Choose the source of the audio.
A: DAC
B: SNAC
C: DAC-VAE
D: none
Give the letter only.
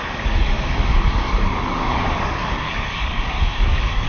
A